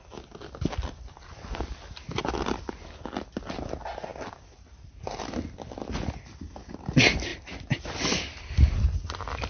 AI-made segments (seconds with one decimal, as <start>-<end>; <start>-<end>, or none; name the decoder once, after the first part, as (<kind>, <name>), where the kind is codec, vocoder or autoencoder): none